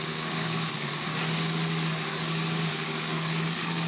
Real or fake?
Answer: fake